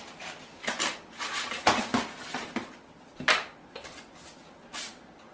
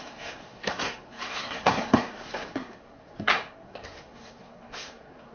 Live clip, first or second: first